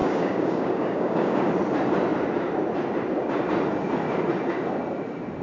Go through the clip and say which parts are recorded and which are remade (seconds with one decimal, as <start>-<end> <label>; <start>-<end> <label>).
0.0-1.5 remade; 1.5-5.4 recorded